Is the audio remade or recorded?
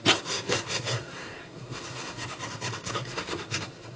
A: remade